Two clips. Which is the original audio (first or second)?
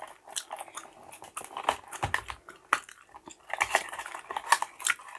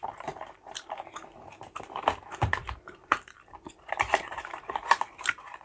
first